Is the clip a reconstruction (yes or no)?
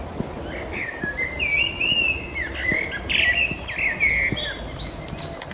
no